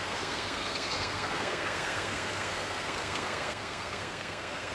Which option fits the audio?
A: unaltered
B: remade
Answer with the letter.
B